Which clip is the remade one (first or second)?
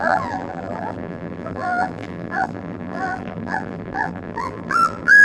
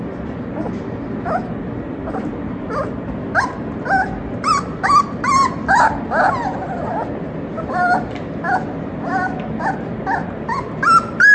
first